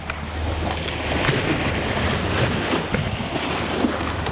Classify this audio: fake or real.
real